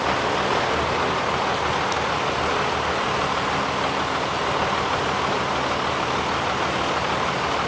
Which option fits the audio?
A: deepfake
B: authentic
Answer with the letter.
B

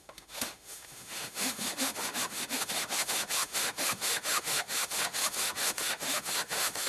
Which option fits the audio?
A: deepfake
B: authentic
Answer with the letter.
A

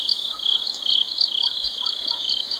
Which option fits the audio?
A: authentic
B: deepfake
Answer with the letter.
B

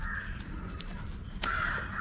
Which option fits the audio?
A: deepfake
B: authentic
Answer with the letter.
B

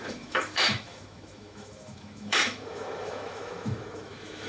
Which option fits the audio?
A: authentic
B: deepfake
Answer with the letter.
B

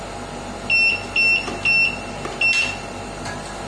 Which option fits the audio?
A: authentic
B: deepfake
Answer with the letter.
A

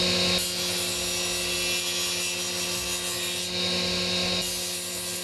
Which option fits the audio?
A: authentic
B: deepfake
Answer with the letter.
A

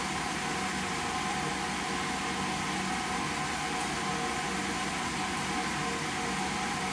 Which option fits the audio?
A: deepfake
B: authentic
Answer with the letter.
B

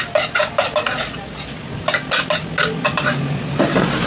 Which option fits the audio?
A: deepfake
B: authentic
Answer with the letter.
B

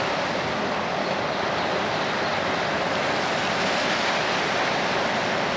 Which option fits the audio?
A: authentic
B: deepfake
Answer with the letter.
A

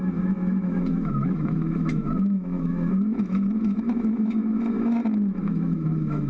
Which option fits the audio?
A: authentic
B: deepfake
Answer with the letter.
B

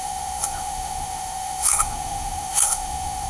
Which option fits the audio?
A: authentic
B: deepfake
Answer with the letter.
B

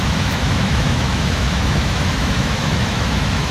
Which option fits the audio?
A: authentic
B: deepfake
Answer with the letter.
B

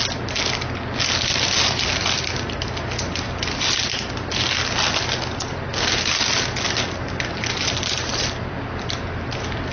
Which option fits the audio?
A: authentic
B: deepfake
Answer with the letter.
A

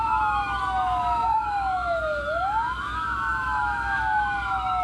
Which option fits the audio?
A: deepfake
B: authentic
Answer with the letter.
A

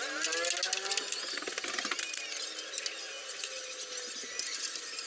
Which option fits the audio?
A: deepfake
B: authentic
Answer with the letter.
B